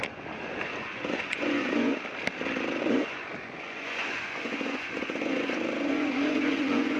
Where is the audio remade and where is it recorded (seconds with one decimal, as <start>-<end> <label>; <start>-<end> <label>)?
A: 0.0-1.9 remade; 1.9-2.8 recorded; 2.8-7.0 remade